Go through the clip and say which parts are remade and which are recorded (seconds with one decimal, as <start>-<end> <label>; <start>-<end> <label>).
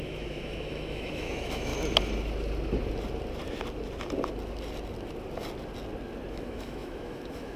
0.0-1.7 remade; 1.7-6.3 recorded; 6.3-7.6 remade